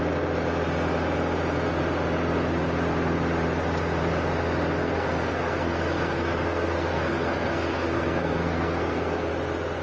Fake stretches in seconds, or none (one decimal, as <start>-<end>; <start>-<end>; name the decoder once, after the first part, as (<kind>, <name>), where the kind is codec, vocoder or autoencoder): 4.8-9.3 (codec, SNAC)